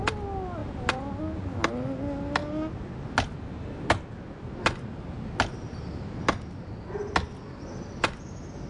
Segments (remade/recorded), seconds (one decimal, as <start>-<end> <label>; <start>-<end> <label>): 0.0-8.7 recorded